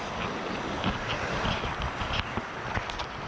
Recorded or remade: recorded